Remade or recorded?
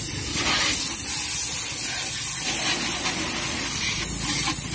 recorded